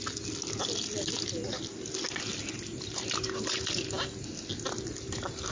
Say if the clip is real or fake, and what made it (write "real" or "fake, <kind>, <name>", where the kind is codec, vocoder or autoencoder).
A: real